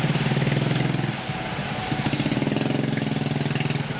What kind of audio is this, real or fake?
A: real